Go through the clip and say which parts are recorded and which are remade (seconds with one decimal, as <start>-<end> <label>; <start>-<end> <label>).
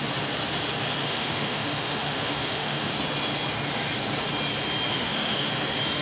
0.0-1.0 recorded; 1.0-2.9 remade; 2.9-4.9 recorded; 4.9-5.5 remade; 5.5-6.0 recorded